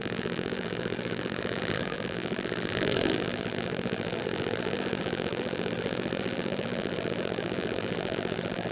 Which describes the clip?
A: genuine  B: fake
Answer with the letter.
B